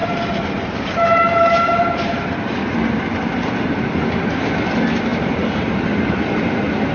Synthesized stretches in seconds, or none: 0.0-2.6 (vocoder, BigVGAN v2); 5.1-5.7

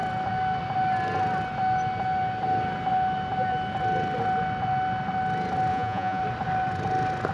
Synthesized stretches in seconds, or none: 5.7-6.2 (vocoder, Vocos)

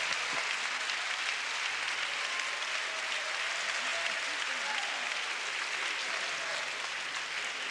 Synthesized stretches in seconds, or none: none

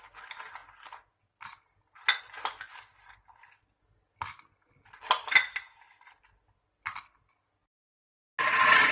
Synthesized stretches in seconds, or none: none

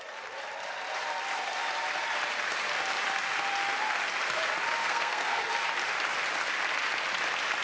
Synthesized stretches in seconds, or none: 4.8-5.4 (codec, SNAC)

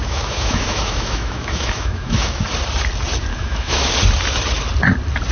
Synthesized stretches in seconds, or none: 0.0-2.4 (autoencoder, DAC-VAE); 3.3-3.9

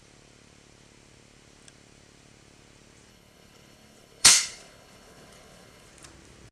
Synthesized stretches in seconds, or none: 3.1-5.9 (codec, HILCodec)